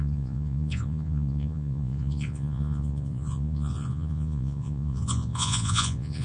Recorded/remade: remade